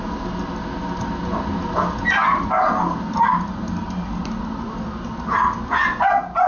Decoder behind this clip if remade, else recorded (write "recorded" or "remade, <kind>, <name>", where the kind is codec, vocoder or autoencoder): recorded